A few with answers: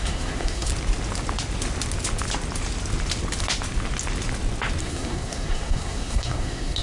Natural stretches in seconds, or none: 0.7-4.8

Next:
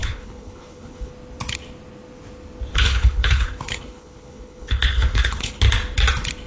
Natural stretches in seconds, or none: 1.1-2.7; 5.6-6.5

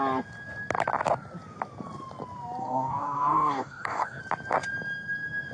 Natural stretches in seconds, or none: 0.0-2.6; 4.2-5.5

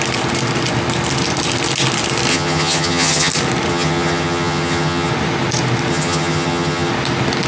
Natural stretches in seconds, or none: 0.0-2.3; 3.3-3.7; 5.1-5.9; 6.9-7.5

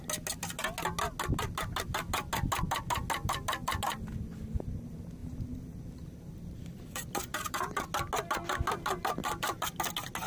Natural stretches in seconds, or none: 0.0-5.2; 7.8-9.2; 9.8-10.3

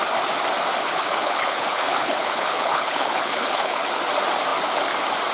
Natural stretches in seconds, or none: 0.0-0.8; 4.0-5.3

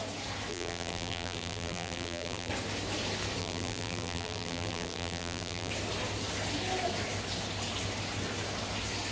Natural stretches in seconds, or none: 0.0-0.5; 2.5-3.4; 5.7-9.1